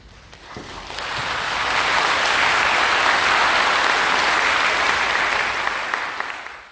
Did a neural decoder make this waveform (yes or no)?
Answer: no